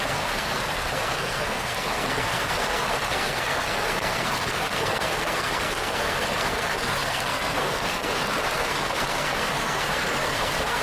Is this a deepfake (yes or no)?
yes